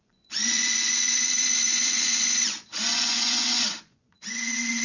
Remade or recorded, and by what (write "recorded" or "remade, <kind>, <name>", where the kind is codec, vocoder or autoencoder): remade, vocoder, Vocos